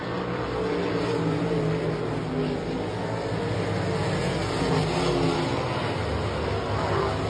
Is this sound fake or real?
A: real